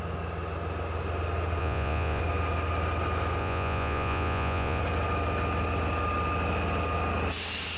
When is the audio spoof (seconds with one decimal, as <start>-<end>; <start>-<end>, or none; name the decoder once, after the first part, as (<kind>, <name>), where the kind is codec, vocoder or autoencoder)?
1.6-2.2 (vocoder, Vocos); 3.4-4.8